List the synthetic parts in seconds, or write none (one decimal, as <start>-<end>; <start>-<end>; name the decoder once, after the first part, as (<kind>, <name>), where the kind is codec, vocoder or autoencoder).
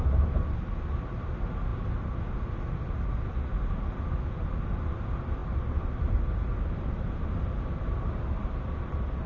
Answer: none